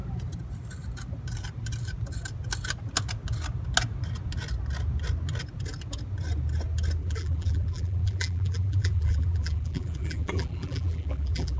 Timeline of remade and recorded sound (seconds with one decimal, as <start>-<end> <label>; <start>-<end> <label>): 0.0-7.0 recorded; 7.0-11.6 remade